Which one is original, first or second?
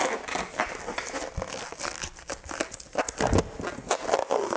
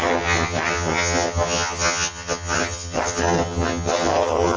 first